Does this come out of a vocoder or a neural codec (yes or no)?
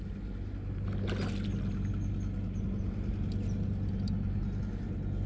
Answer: no